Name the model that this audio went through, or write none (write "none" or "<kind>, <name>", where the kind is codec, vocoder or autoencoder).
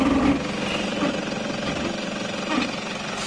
none